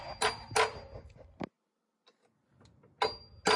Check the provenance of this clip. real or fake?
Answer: real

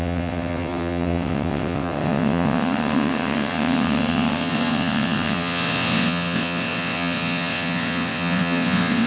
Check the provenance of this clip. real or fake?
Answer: fake